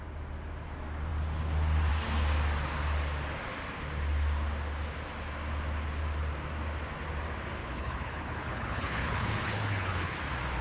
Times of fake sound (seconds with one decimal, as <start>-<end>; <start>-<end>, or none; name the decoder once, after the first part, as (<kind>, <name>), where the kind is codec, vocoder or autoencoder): 7.6-10.2 (codec, HILCodec)